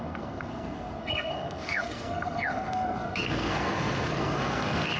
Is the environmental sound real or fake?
fake